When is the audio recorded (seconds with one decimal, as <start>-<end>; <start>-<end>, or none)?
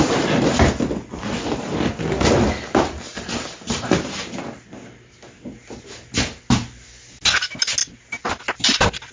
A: 0.0-9.1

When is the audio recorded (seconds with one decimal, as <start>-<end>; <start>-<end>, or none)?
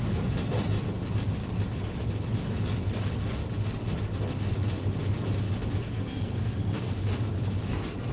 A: 0.0-5.8; 7.0-8.1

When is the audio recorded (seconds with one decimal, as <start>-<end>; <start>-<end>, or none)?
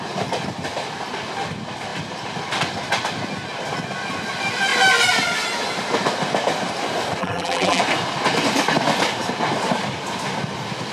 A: 0.0-7.2; 7.8-10.9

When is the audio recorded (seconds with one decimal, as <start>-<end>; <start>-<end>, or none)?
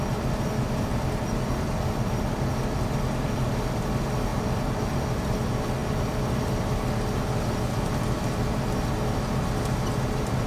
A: 0.0-10.5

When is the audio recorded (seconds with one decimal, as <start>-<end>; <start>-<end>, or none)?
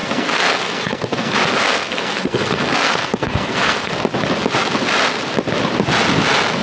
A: 3.9-6.6